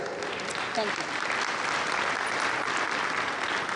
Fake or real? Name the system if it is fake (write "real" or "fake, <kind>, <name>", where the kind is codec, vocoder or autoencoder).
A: real